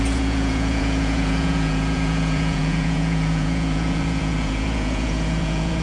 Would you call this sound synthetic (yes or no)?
yes